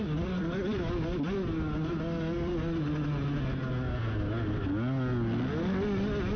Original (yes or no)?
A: yes